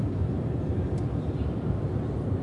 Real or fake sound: fake